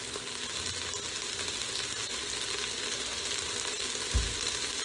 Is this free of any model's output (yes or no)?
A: yes